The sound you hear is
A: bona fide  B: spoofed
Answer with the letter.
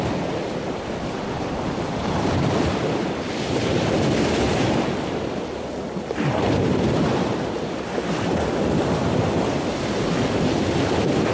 A